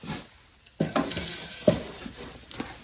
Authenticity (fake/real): real